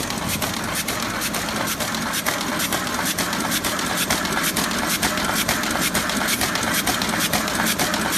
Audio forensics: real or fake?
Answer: real